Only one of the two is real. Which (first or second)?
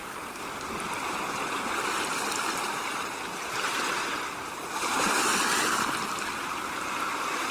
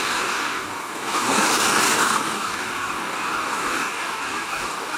first